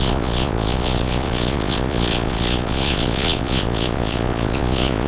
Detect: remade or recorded remade